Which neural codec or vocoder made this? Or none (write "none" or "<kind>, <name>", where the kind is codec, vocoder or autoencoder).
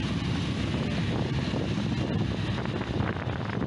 none